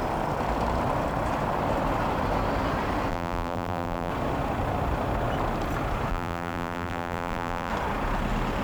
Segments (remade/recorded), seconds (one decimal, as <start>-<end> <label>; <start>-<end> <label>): 0.0-3.1 recorded; 3.1-4.1 remade; 4.1-6.1 recorded; 6.1-7.7 remade; 7.7-8.6 recorded